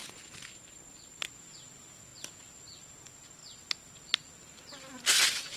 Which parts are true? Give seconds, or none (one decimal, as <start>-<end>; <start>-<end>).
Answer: 0.8-5.6